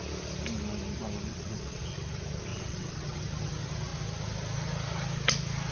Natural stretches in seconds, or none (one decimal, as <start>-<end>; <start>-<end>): 0.0-1.3; 1.8-2.5; 3.2-5.7

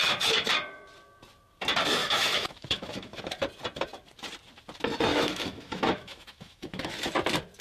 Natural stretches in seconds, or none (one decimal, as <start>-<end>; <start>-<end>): 0.0-2.0; 3.2-5.1; 7.1-7.6